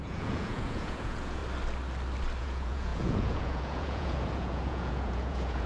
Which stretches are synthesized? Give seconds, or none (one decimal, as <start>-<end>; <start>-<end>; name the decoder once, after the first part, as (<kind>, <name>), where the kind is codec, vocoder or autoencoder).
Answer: 0.0-1.4 (vocoder, Vocos); 2.4-5.7